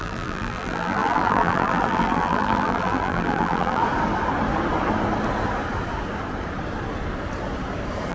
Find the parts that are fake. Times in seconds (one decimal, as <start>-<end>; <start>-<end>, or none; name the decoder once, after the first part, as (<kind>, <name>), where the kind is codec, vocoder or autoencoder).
0.0-3.8 (vocoder, BigVGAN v2)